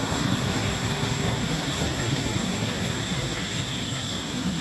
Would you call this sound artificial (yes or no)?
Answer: yes